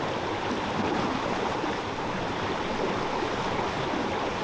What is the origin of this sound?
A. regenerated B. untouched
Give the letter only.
B